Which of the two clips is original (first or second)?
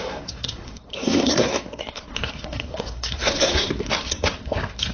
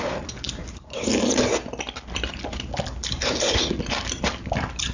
second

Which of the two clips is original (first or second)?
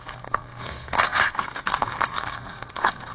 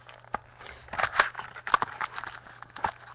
second